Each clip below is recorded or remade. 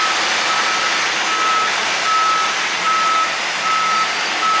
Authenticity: recorded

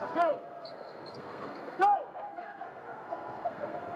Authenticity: remade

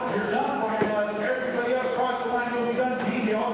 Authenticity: remade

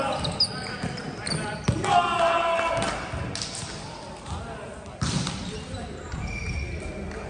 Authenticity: recorded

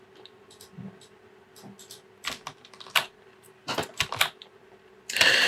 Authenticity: recorded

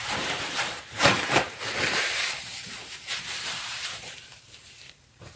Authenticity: remade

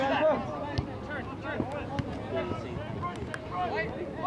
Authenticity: recorded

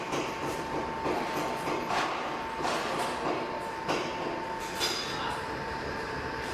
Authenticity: recorded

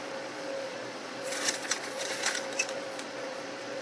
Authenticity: remade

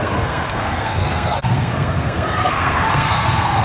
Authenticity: remade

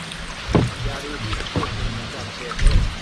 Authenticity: recorded